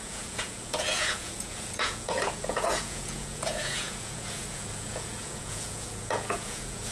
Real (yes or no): no